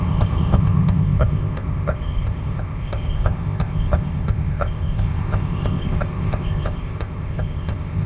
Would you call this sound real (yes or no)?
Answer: no